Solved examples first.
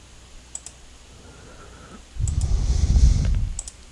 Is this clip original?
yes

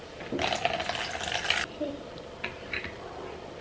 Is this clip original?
yes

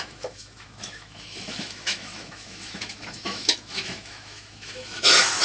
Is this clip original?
no